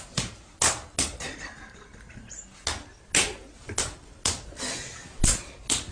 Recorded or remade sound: recorded